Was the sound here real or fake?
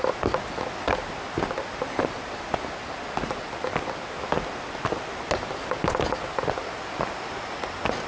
real